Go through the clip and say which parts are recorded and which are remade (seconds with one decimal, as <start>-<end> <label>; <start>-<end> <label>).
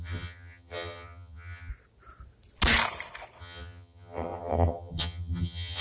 0.0-1.7 remade; 1.7-3.4 recorded; 3.4-5.8 remade